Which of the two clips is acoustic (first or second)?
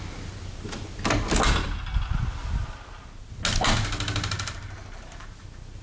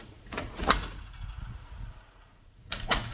first